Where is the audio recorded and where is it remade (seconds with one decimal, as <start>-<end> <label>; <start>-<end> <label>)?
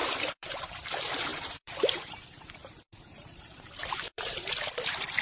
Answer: 0.0-0.6 remade; 0.6-1.3 recorded; 1.3-4.4 remade; 4.4-5.2 recorded